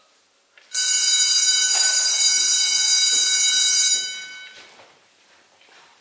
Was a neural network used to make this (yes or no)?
no